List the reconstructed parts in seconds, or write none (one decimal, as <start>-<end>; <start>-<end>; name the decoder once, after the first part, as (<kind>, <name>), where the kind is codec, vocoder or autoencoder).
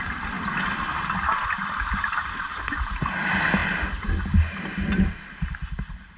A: none